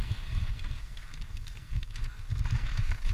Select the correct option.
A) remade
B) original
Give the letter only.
A